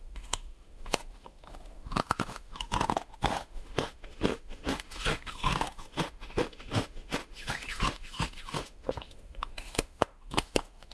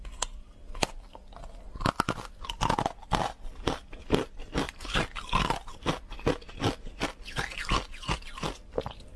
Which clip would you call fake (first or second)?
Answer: first